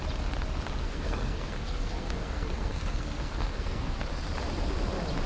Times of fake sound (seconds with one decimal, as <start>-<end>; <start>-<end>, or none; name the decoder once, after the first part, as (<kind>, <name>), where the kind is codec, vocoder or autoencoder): 0.8-4.0 (codec, SNAC)